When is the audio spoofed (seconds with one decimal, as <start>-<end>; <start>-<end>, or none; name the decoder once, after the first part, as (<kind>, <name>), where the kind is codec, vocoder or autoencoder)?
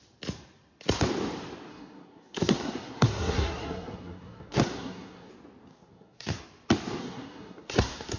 1.7-5.3 (codec, SNAC); 5.7-6.4; 7.0-8.2